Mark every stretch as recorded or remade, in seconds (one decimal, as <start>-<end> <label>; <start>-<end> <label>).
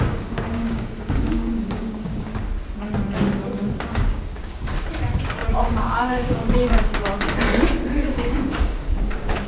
0.0-2.3 remade; 2.3-3.9 recorded; 3.9-4.7 remade; 4.7-5.5 recorded; 5.5-6.4 remade; 6.4-7.9 recorded; 7.9-9.5 remade